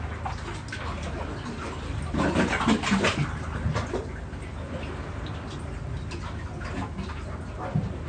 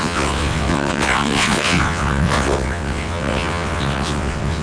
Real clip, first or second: first